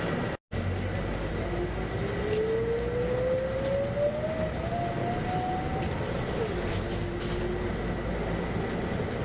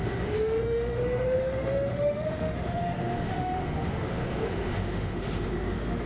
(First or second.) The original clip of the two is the first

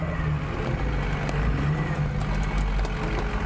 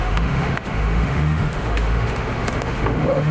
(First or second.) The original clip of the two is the first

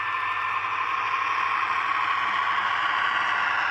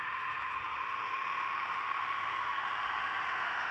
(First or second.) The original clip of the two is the first